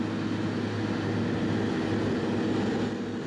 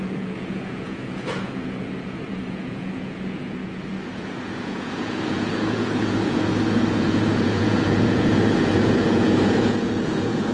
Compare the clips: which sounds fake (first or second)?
second